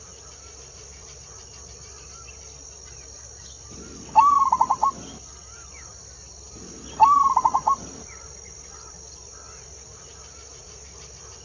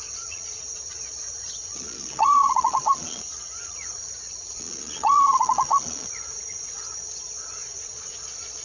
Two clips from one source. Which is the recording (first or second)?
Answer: first